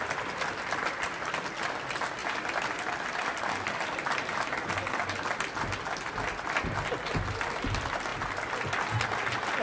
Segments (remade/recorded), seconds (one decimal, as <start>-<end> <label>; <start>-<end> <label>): 0.0-9.6 recorded